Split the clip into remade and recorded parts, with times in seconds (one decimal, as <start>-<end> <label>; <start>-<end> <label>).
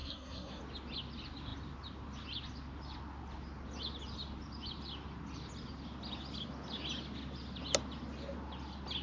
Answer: 0.0-0.6 remade; 0.6-9.0 recorded